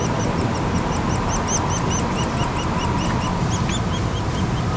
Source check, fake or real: real